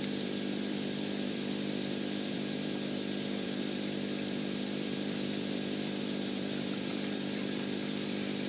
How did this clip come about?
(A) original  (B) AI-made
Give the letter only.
B